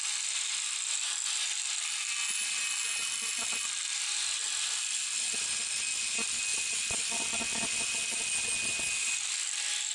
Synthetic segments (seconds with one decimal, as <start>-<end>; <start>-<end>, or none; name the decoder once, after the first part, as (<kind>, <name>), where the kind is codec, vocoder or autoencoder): none